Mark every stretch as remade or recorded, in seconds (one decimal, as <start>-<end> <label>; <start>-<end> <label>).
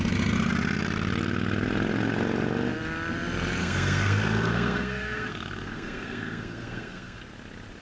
0.0-3.6 recorded; 3.6-7.2 remade; 7.2-7.8 recorded